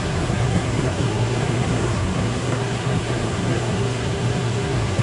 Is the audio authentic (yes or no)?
no